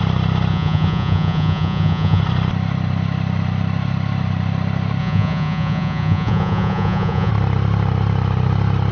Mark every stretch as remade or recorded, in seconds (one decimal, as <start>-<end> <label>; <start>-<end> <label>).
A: 0.0-0.5 recorded; 0.5-2.2 remade; 2.2-5.0 recorded; 5.0-7.3 remade; 7.3-8.9 recorded